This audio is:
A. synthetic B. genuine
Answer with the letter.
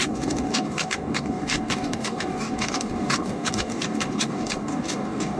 A